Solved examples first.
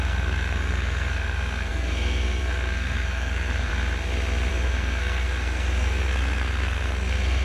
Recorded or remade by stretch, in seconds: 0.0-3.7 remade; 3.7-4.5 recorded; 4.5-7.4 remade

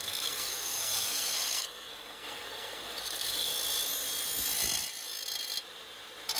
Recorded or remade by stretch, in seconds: 0.0-3.5 remade; 3.5-6.4 recorded